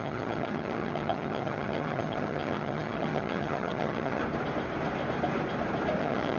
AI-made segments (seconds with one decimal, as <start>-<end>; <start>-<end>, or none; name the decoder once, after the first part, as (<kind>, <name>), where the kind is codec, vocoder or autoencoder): 0.0-4.2 (vocoder, HiFi-GAN); 6.0-6.4